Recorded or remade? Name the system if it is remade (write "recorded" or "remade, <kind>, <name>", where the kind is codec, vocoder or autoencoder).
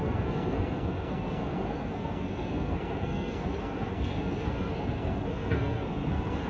remade, codec, SNAC